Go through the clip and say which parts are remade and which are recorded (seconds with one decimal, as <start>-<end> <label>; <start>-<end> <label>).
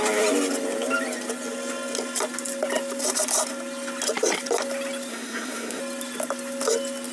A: 0.0-5.1 recorded; 5.1-5.8 remade; 5.8-7.1 recorded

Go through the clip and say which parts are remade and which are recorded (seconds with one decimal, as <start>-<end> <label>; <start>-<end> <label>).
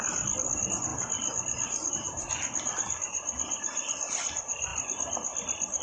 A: 0.0-5.8 recorded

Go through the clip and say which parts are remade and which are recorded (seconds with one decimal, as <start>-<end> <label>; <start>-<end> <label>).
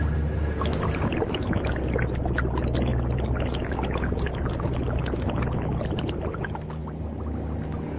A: 0.0-8.0 recorded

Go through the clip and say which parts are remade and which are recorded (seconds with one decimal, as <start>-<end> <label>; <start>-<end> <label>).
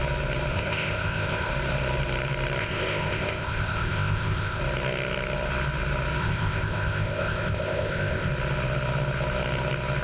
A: 0.0-0.5 recorded; 0.5-1.5 remade; 1.5-2.6 recorded; 2.6-4.6 remade; 4.6-6.2 recorded; 6.2-8.3 remade; 8.3-10.0 recorded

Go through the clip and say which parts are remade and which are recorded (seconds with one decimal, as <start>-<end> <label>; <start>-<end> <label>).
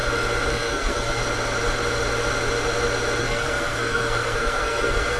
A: 0.0-0.5 recorded; 0.5-1.2 remade; 1.2-3.2 recorded; 3.2-5.2 remade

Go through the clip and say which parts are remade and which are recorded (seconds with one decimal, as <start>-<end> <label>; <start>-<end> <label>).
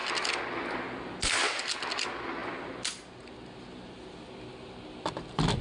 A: 0.0-5.6 recorded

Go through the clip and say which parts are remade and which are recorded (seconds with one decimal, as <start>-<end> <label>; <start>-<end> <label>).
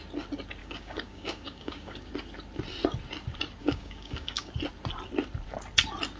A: 0.0-0.6 recorded; 0.6-2.1 remade; 2.1-3.6 recorded; 3.6-4.5 remade; 4.5-6.2 recorded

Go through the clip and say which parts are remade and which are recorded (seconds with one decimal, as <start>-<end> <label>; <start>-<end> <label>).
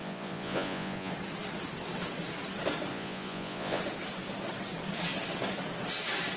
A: 0.0-1.1 remade; 1.1-2.9 recorded; 2.9-3.8 remade; 3.8-6.4 recorded